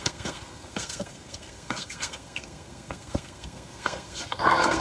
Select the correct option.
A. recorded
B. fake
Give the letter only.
B